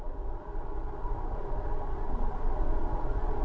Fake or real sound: fake